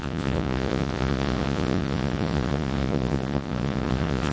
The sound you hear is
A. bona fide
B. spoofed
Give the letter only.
B